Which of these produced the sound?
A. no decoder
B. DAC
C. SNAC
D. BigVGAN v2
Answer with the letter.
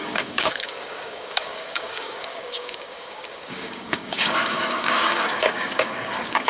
B